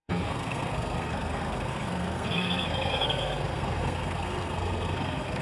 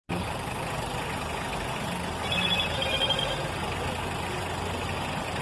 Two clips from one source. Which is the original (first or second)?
second